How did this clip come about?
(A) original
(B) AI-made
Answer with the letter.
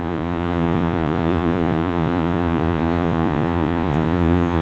B